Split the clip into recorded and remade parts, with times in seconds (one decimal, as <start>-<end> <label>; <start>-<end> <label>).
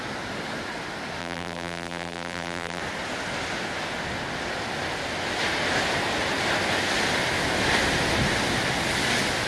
0.0-1.2 recorded; 1.2-2.8 remade; 2.8-9.5 recorded